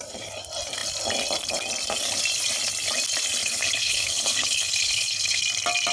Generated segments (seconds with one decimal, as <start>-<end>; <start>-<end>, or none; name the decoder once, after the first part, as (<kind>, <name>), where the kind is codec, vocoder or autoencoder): 3.4-5.4 (codec, HILCodec)